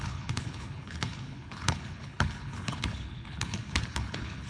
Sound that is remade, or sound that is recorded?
remade